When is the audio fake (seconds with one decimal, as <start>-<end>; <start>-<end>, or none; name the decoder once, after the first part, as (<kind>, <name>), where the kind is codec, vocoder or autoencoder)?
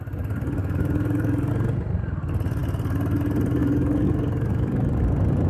0.6-1.5 (codec, DAC); 3.6-5.0